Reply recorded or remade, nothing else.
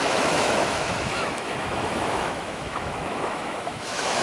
remade